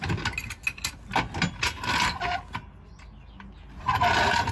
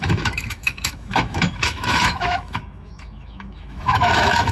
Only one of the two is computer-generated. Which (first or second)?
second